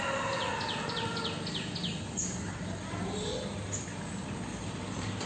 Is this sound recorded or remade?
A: recorded